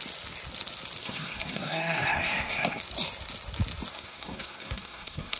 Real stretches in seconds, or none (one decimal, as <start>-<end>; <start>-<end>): 0.0-1.0; 2.8-3.9